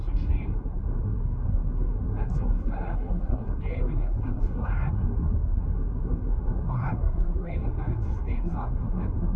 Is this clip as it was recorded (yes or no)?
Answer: no